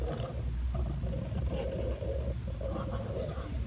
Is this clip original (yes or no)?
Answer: yes